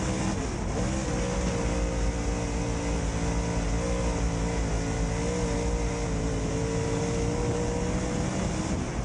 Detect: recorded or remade recorded